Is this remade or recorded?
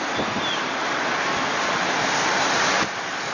recorded